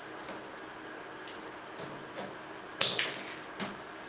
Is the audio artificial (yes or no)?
no